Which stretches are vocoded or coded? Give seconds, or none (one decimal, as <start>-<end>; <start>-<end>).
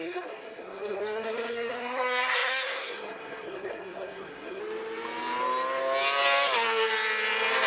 0.0-4.6